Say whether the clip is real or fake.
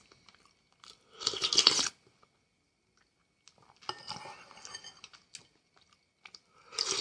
real